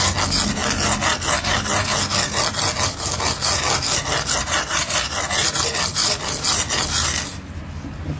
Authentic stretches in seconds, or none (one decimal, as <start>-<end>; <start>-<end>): 0.0-8.2